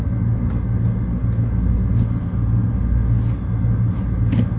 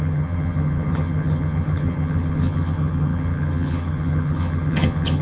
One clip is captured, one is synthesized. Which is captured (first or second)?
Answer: first